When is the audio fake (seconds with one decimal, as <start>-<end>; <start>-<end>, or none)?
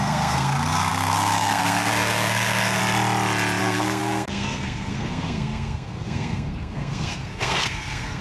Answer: 0.0-2.8; 3.6-8.2